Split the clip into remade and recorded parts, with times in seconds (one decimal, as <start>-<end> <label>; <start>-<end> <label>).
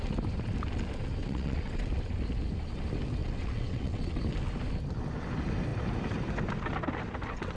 0.0-1.2 recorded; 1.2-1.9 remade; 1.9-3.2 recorded; 3.2-4.2 remade; 4.2-7.6 recorded